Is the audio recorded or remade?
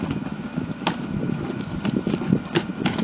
recorded